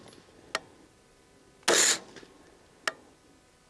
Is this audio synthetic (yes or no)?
no